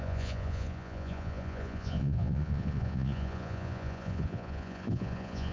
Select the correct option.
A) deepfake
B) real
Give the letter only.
A